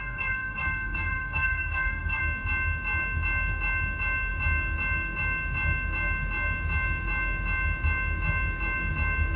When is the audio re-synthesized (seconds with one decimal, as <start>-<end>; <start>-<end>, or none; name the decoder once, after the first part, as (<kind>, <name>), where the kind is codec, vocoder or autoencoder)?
0.0-2.2 (codec, SNAC)